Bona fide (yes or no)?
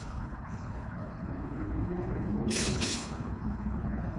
no